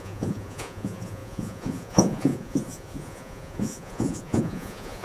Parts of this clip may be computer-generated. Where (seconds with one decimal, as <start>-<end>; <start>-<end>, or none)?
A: 0.0-5.0